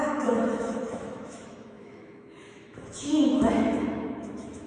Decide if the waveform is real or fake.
fake